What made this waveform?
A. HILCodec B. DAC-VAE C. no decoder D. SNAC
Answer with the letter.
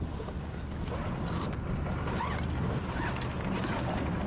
C